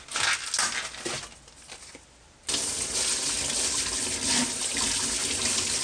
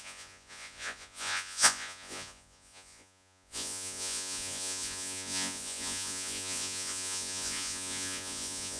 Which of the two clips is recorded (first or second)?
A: first